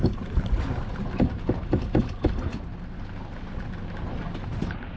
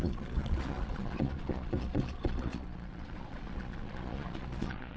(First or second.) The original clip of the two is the first